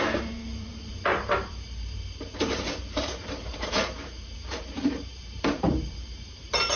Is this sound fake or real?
fake